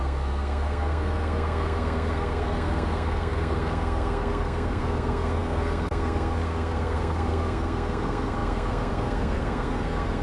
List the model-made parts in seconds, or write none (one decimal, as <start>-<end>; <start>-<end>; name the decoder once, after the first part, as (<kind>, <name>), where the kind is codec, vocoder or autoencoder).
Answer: 0.0-10.2 (codec, SNAC)